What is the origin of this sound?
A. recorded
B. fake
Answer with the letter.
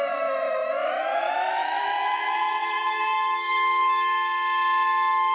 B